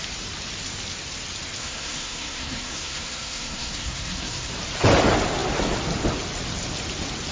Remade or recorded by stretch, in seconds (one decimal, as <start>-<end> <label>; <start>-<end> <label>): 0.0-1.6 recorded; 1.6-4.5 remade; 4.5-7.3 recorded